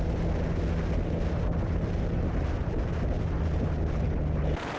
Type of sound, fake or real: real